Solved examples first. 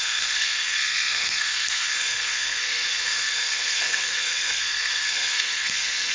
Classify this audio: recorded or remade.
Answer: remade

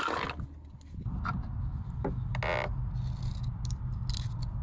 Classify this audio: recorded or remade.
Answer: recorded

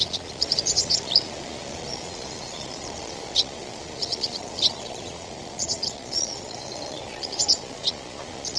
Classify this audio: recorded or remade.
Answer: remade